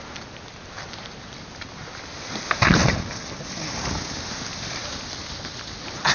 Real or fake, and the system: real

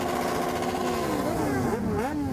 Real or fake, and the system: real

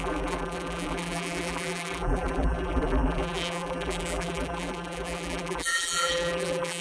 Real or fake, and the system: fake, vocoder, BigVGAN v2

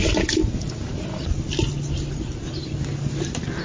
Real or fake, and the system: real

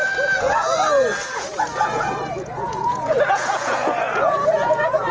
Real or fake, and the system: fake, vocoder, Vocos